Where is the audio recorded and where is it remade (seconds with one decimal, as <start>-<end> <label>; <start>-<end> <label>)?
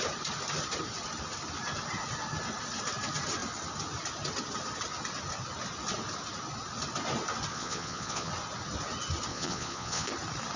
0.0-7.5 recorded; 7.5-8.3 remade; 8.3-9.3 recorded; 9.3-10.1 remade; 10.1-10.6 recorded